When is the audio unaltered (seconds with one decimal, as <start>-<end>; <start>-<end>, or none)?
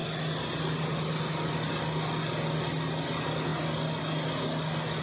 0.0-5.0